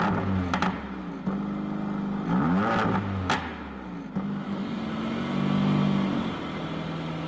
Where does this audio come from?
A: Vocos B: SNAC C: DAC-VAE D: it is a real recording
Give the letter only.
D